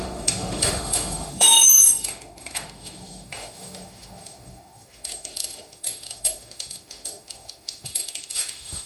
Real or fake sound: fake